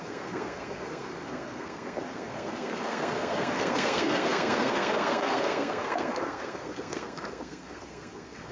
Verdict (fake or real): fake